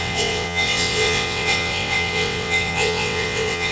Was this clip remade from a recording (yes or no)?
yes